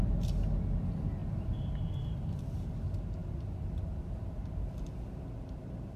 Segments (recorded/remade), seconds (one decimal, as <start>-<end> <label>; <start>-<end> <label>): 0.0-6.0 recorded